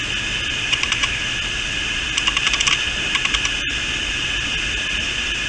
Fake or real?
real